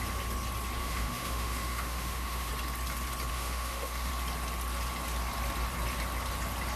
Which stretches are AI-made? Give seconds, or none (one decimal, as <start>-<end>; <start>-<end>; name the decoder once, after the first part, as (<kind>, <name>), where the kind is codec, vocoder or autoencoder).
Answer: 0.8-2.5 (autoencoder, DAC-VAE); 3.3-4.1